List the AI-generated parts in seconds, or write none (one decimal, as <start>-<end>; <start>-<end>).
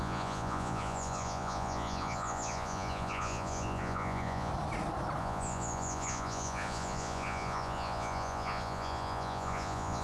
0.0-4.5; 5.2-10.0